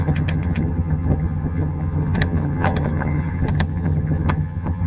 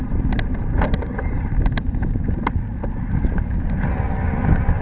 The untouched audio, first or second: second